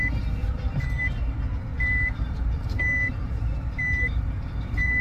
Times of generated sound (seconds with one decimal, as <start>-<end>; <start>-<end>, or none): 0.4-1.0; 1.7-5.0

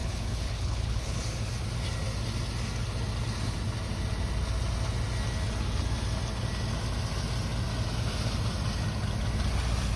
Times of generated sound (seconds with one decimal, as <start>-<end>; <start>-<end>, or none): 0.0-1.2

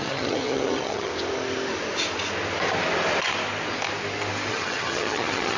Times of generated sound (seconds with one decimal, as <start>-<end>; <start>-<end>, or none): 0.0-1.1; 4.5-5.6

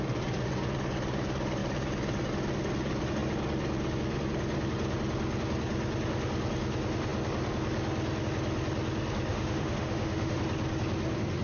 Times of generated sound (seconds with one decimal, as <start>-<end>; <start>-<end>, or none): 9.3-10.4

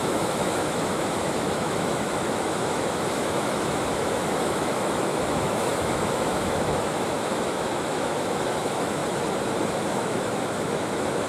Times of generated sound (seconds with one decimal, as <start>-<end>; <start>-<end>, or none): 0.0-9.0; 9.7-11.3

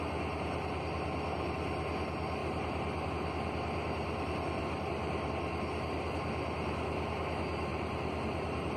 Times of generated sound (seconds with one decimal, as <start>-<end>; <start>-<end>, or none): 2.4-3.1; 4.6-5.3; 7.7-8.8